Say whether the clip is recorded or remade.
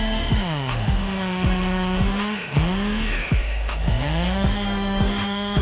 remade